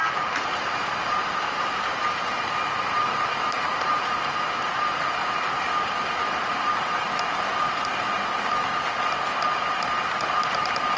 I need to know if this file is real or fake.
fake